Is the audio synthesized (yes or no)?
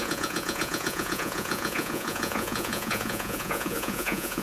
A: yes